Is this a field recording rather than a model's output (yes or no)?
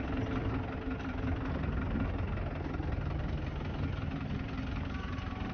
yes